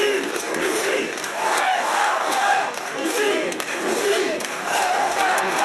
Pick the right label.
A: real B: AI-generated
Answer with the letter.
B